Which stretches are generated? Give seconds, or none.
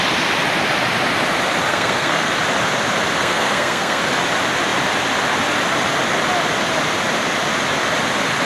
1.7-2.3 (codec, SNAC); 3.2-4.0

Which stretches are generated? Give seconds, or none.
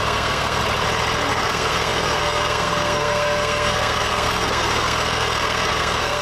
0.0-0.6 (codec, SNAC); 1.3-6.2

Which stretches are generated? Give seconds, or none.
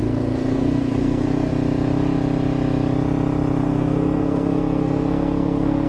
0.0-1.5 (codec, SNAC); 3.6-5.9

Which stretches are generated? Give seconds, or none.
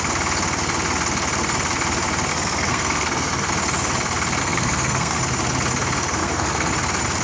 2.3-3.5 (codec, SNAC); 4.4-5.2; 6.2-6.7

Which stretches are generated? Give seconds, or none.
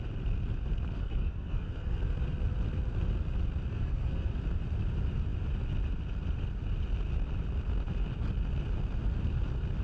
1.0-2.0 (codec, SNAC); 3.7-4.3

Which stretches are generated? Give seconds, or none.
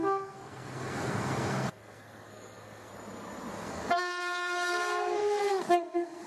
0.0-2.9 (codec, SNAC); 3.5-6.3